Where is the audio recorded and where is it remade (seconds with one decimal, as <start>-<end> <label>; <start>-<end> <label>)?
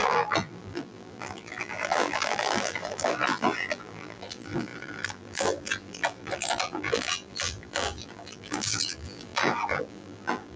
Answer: 0.0-10.6 remade